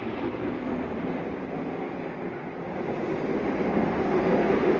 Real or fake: real